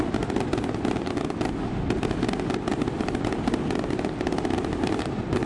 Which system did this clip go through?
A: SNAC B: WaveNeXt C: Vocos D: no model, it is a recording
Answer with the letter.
D